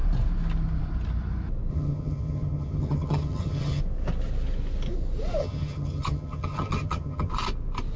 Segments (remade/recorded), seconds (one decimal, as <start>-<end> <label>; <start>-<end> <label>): 0.0-1.7 recorded; 1.7-3.8 remade; 3.8-5.4 recorded; 5.4-7.3 remade; 7.3-8.0 recorded